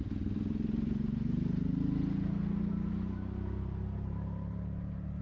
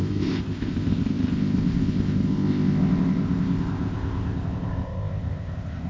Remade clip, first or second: second